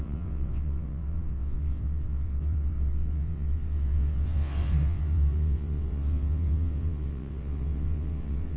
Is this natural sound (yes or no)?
no